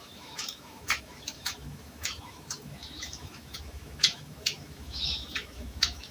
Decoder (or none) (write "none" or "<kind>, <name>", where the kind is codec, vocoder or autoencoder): autoencoder, DAC-VAE